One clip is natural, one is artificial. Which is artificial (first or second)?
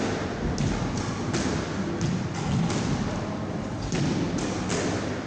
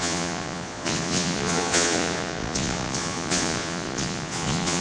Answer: second